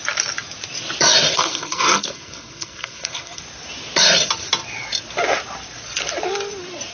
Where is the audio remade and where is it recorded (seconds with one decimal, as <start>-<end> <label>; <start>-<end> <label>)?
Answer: 0.0-1.3 recorded; 1.3-3.4 remade; 3.4-6.9 recorded